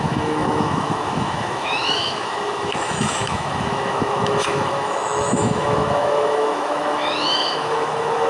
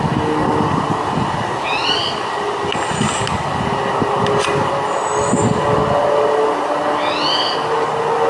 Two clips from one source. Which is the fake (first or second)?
first